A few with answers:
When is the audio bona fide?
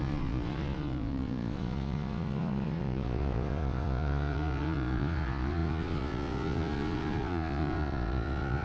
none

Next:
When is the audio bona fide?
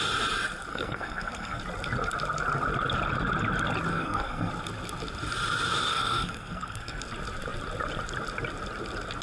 0.0-0.7; 1.6-3.9; 4.5-5.9; 7.0-9.2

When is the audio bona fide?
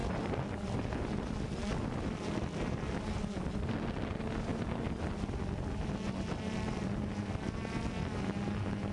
0.0-8.9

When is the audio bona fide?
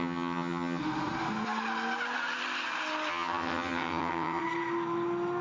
0.8-3.1; 4.4-5.4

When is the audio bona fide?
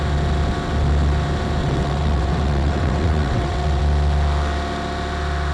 0.0-1.6; 3.8-5.5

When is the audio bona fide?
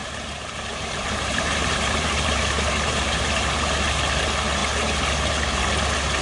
3.7-6.2